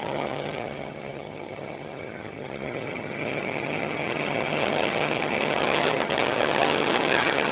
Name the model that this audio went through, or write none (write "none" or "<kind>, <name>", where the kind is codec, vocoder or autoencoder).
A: vocoder, HiFi-GAN